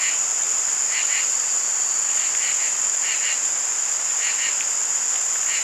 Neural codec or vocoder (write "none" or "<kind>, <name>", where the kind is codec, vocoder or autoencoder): none